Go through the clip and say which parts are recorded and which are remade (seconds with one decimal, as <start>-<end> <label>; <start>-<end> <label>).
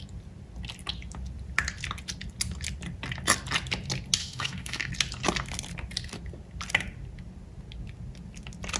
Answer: 0.0-4.2 recorded; 4.2-4.9 remade; 4.9-8.8 recorded